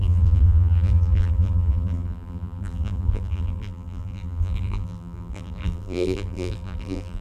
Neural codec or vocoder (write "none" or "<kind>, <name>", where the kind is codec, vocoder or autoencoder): vocoder, BigVGAN v2